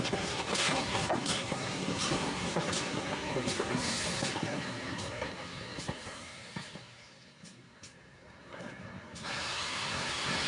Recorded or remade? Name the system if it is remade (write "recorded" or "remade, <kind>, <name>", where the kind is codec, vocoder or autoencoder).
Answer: remade, codec, SNAC